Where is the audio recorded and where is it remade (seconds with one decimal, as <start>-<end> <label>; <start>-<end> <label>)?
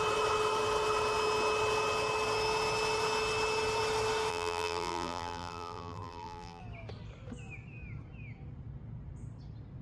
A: 0.0-4.3 recorded; 4.3-6.6 remade; 6.6-9.8 recorded